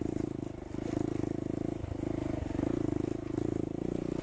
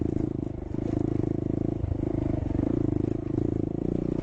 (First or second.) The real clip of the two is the first